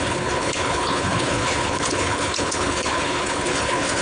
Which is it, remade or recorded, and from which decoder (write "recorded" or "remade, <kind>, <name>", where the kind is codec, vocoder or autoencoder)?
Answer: remade, codec, HILCodec